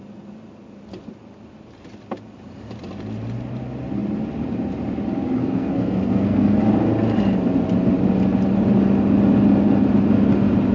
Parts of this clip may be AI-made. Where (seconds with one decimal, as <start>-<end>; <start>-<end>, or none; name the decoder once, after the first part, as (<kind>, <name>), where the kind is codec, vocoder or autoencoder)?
5.4-6.6 (codec, SNAC)